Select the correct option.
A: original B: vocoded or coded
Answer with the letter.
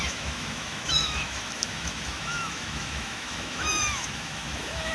B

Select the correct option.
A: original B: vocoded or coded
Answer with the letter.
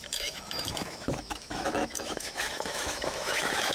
B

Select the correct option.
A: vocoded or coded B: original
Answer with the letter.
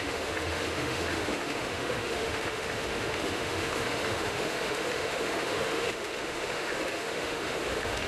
A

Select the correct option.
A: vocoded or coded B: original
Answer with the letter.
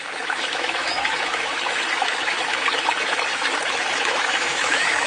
A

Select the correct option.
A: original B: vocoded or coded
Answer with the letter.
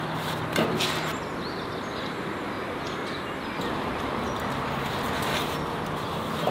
A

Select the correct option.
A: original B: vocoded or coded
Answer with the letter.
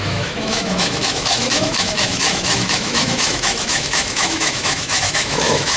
B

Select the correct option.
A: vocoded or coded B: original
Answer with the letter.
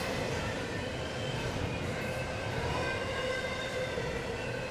B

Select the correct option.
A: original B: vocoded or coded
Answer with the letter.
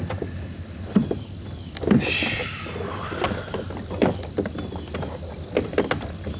A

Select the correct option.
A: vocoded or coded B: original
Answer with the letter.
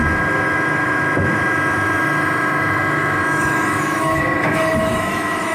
A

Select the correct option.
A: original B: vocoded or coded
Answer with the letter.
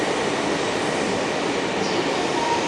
A